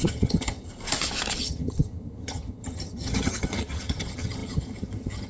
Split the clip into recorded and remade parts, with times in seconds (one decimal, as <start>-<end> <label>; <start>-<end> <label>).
0.0-0.7 remade; 0.7-1.4 recorded; 1.4-5.3 remade